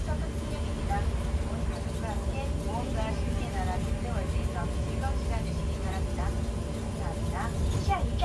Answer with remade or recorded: recorded